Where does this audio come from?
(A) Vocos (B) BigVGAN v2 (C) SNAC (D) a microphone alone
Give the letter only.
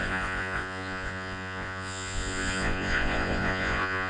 A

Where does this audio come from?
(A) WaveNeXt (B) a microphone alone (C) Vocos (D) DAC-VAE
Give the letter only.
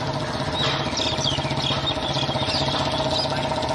B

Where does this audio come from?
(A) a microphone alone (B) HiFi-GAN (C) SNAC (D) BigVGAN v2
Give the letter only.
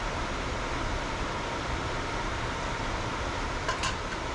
D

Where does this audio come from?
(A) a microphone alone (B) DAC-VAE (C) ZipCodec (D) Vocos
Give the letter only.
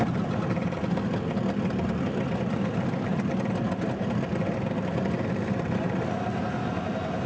A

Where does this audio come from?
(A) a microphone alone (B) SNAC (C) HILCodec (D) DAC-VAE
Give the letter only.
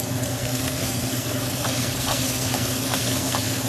B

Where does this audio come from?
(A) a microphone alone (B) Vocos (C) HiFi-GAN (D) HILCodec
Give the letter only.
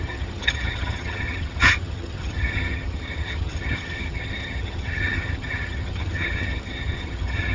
C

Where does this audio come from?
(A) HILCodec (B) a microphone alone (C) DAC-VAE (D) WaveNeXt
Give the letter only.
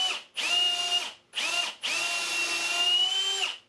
B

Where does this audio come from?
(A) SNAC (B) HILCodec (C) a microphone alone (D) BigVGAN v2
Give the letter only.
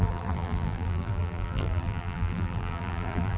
D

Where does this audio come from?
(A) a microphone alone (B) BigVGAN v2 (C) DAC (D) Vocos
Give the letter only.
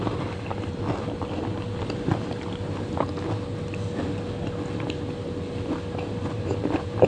B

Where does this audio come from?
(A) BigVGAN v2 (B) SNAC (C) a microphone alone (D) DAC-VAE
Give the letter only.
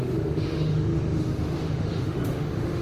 D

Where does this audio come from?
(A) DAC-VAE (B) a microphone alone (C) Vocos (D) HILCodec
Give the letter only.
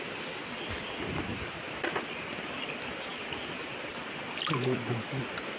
B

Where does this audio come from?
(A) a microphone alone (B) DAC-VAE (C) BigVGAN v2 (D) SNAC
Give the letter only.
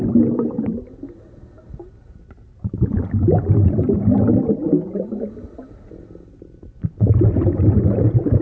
A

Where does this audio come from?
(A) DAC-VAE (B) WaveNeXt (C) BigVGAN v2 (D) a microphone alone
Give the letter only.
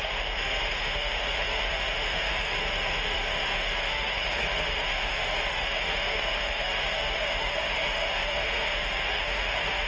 A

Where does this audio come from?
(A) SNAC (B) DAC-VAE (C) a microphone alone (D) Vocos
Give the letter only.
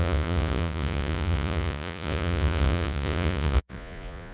D